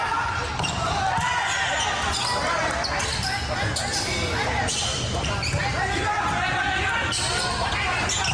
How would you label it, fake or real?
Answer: real